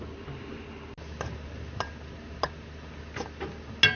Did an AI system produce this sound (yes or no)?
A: no